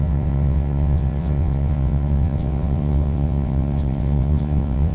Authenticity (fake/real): fake